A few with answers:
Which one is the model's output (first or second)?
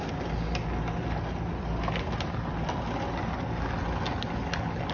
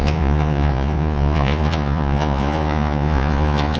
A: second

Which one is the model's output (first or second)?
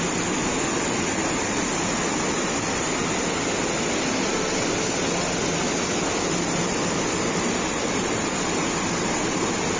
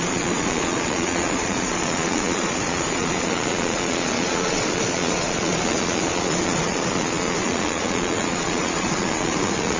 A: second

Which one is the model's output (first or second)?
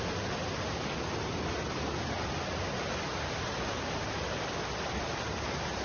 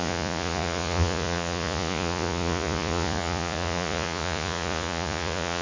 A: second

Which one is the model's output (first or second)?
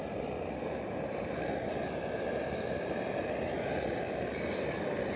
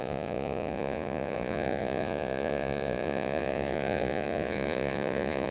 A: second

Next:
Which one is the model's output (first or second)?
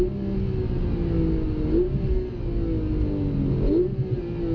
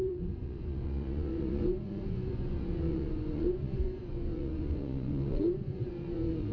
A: second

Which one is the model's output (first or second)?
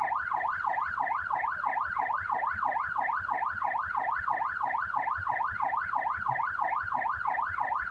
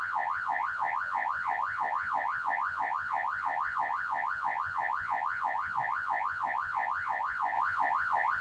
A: second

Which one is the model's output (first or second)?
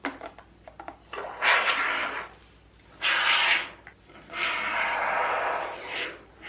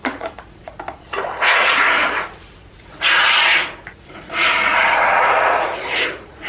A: second